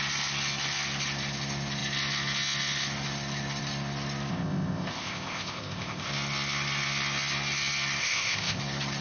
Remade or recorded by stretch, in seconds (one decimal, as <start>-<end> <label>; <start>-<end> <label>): 0.0-4.3 recorded; 4.3-6.1 remade; 6.1-8.0 recorded; 8.0-8.6 remade; 8.6-9.0 recorded